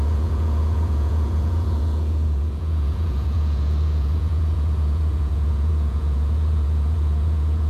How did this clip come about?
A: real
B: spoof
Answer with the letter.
B